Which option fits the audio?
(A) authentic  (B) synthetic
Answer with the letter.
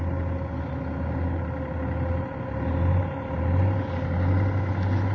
A